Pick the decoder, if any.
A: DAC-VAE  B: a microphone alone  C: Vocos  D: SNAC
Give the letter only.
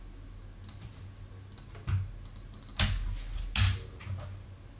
B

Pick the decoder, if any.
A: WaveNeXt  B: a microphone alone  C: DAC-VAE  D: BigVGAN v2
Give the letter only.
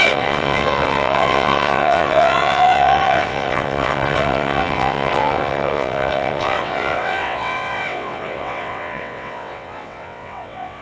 A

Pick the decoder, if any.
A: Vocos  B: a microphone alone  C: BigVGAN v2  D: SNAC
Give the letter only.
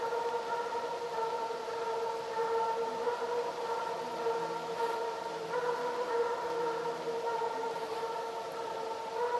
B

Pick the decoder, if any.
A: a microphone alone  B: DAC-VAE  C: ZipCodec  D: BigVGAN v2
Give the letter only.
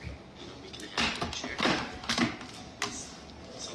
A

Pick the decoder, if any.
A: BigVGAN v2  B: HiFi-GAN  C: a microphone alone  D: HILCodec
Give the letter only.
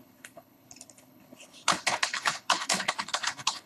D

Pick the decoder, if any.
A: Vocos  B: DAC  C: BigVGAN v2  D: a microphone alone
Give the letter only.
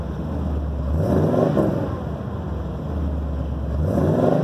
D